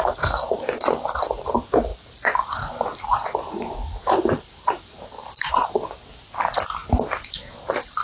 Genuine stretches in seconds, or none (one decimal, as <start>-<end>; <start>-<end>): 0.0-1.9; 6.1-6.8